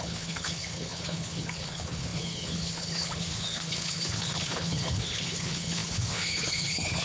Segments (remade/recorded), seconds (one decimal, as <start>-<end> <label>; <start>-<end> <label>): 0.0-7.0 remade